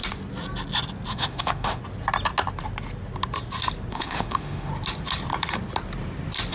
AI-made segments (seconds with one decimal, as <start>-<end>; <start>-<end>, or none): 1.1-1.8; 3.9-4.7